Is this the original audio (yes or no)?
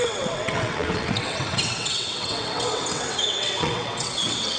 no